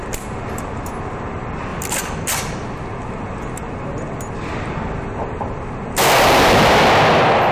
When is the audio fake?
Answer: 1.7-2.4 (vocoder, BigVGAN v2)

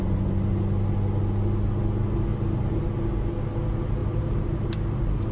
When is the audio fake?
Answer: 2.3-2.8 (vocoder, BigVGAN v2); 4.0-4.7

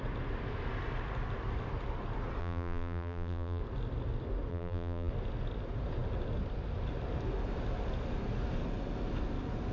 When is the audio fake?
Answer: 2.4-3.6 (vocoder, BigVGAN v2); 4.5-5.1

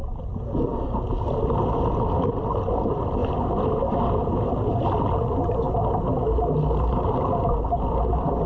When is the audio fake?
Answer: 0.7-1.8 (vocoder, BigVGAN v2)

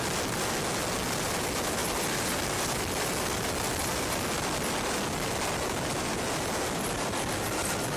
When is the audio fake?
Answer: none

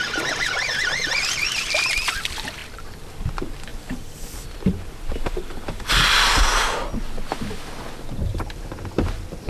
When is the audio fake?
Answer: 0.0-6.5 (vocoder, BigVGAN v2); 8.3-9.5

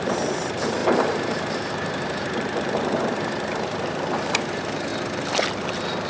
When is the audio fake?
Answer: 0.0-4.9 (vocoder, BigVGAN v2)